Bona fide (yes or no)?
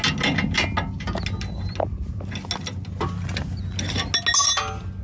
yes